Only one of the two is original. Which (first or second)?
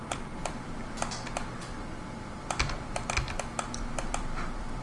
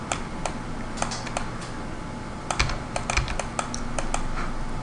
second